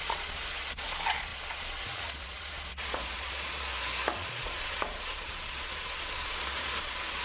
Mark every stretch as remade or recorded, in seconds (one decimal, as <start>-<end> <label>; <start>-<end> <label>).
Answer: 0.0-3.7 remade; 3.7-4.2 recorded; 4.2-7.2 remade